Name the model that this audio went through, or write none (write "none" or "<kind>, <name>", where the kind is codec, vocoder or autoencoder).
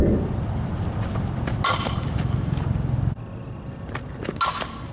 none